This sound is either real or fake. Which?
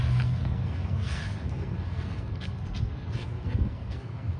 fake